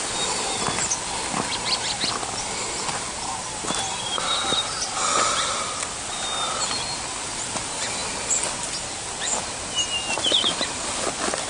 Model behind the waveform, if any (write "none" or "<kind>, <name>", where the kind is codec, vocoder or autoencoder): none